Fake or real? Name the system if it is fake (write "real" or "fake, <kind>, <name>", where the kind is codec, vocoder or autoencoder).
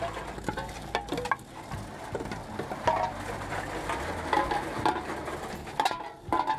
real